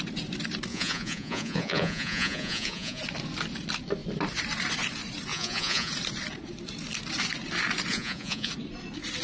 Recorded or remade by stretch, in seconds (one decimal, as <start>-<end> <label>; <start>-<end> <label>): 0.0-0.7 recorded; 0.7-3.0 remade; 3.0-5.3 recorded; 5.3-5.9 remade; 5.9-7.9 recorded; 7.9-8.5 remade; 8.5-9.2 recorded